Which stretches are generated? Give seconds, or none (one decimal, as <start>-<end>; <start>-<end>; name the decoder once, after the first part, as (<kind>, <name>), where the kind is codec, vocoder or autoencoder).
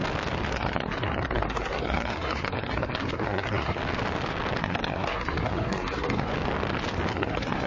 0.5-3.8 (codec, SNAC); 4.6-6.3; 7.1-7.7